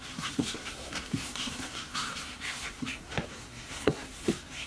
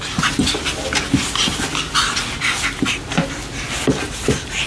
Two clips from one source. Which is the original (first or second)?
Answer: second